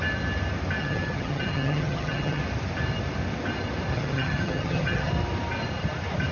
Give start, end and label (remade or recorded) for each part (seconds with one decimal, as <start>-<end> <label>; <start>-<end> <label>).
0.0-0.8 recorded; 0.8-2.4 remade; 2.4-3.9 recorded; 3.9-5.1 remade; 5.1-6.3 recorded